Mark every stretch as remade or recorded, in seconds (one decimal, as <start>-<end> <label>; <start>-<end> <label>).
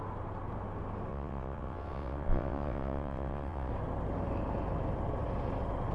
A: 0.0-1.1 recorded; 1.1-3.7 remade; 3.7-5.9 recorded